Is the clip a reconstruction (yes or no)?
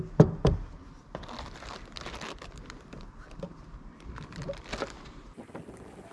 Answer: no